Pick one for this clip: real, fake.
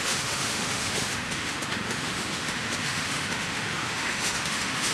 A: fake